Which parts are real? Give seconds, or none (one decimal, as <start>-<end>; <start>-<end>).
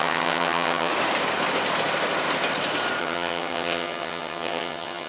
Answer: 0.9-3.0